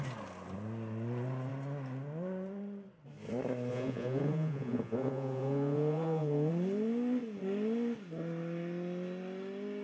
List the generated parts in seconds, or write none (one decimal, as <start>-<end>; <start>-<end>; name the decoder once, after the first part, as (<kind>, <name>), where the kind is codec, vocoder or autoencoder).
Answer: 3.7-6.5 (vocoder, Vocos)